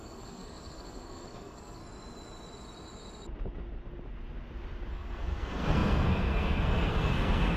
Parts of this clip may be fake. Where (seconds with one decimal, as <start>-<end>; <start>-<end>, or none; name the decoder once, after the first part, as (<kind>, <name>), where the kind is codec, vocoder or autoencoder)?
0.0-1.8 (codec, SNAC); 4.9-7.6